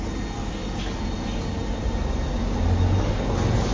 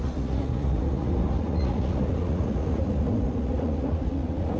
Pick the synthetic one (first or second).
second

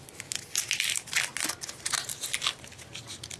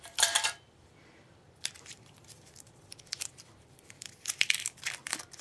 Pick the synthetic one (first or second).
second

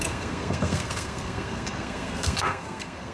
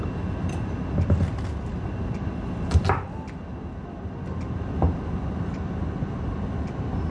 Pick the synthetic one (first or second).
first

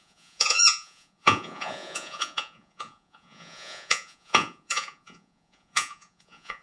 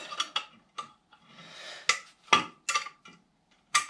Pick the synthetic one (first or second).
first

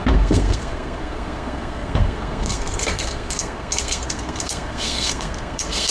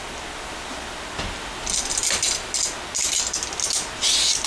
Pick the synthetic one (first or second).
first